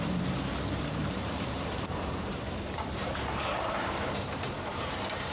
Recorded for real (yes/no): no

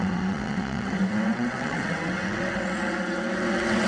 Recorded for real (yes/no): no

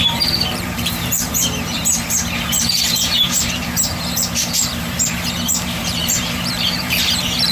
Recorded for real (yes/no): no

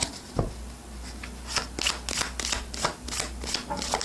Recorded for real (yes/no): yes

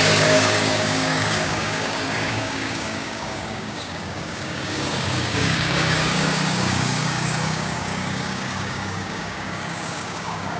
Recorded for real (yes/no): no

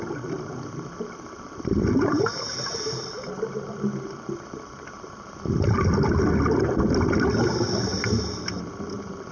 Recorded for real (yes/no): yes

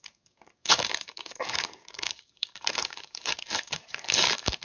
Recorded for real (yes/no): no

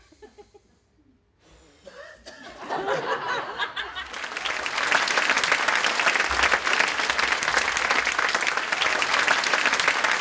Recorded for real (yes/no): yes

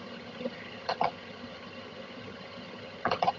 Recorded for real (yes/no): no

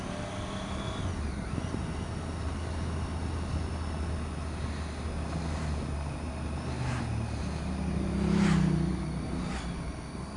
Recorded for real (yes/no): yes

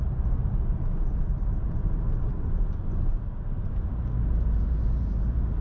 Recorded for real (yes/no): no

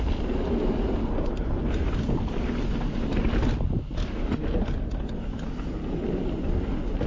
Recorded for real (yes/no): yes